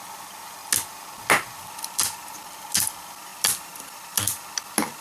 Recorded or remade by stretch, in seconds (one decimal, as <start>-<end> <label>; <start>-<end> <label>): 0.0-5.0 recorded